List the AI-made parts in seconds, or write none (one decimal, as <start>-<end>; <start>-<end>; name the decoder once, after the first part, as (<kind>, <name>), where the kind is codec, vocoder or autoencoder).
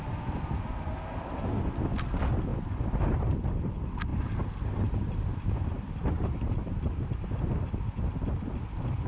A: none